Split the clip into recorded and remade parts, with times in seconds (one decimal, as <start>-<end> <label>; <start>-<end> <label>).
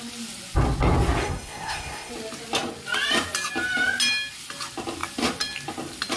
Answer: 0.0-1.2 recorded; 1.2-2.1 remade; 2.1-6.2 recorded